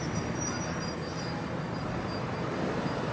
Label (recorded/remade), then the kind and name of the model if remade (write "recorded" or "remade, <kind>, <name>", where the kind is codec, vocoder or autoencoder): recorded